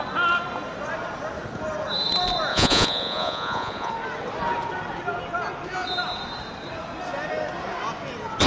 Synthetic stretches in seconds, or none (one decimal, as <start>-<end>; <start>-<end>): 2.5-3.9